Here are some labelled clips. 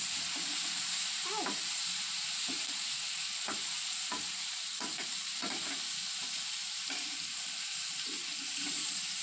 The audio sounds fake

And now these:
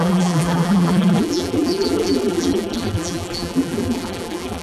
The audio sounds fake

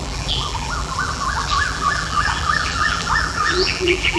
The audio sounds fake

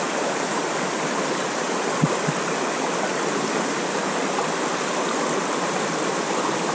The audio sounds fake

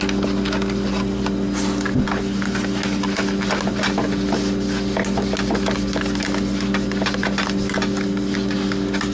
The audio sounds real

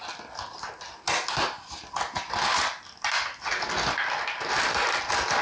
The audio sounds real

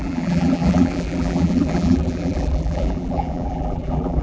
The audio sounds fake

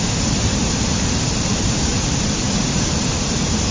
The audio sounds fake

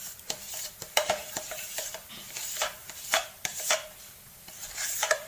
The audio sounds fake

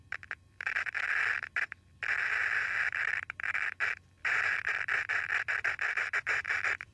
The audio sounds fake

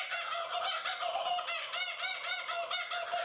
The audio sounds real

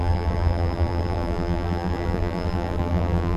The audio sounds fake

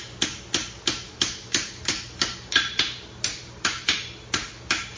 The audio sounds real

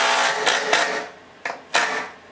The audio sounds real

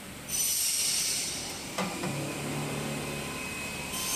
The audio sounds real